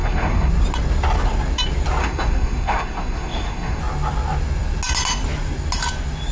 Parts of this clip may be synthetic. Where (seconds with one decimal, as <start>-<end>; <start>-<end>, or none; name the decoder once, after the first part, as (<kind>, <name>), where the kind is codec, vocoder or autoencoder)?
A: 0.0-0.5 (codec, SNAC); 2.0-3.8

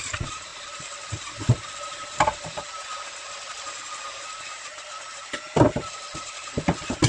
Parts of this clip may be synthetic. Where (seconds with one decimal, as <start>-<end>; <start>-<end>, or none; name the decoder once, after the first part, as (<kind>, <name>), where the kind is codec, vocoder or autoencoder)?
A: none